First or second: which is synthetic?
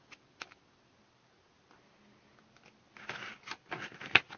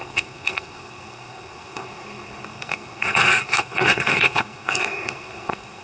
second